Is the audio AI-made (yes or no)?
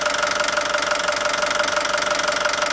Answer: no